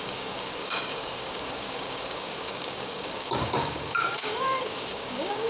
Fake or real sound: fake